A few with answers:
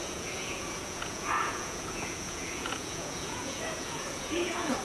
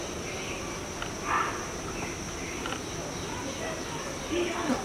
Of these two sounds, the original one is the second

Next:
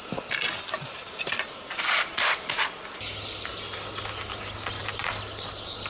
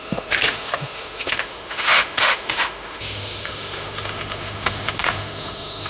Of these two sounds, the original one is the first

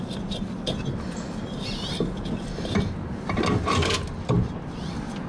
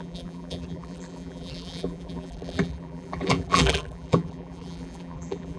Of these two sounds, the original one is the first